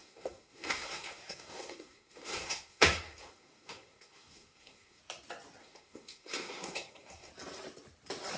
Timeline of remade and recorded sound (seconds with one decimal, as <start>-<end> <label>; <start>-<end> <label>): 0.0-5.0 remade; 5.0-5.6 recorded; 5.6-7.3 remade; 7.3-8.4 recorded